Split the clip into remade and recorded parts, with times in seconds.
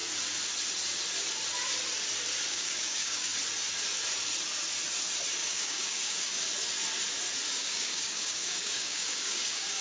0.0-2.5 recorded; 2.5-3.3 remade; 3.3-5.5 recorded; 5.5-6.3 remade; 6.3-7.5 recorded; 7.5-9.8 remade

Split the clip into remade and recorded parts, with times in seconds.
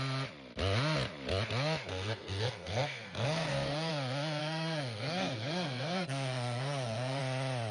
0.0-1.9 recorded; 1.9-3.9 remade; 3.9-4.4 recorded; 4.4-7.2 remade; 7.2-7.7 recorded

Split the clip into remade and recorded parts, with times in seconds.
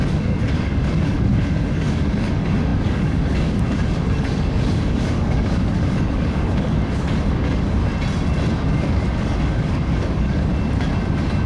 0.0-7.8 remade; 7.8-8.8 recorded; 8.8-10.5 remade; 10.5-11.5 recorded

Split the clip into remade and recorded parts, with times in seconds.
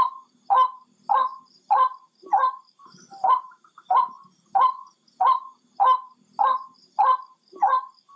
0.0-8.2 recorded